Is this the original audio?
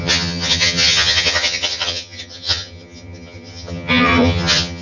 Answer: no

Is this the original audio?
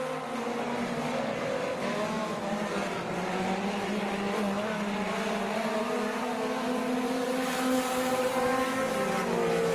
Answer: yes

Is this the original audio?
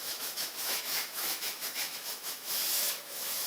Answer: no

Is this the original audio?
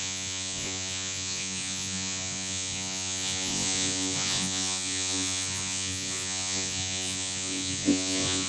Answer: no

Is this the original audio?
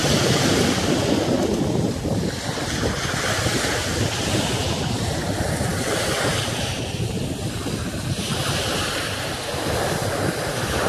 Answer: yes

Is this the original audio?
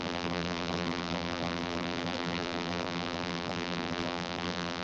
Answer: no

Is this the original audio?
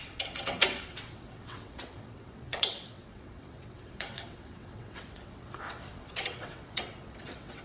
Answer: no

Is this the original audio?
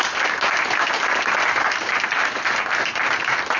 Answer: yes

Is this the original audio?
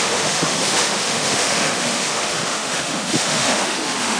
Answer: no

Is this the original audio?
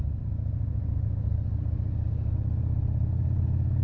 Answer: yes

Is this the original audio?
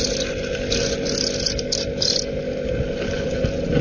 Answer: yes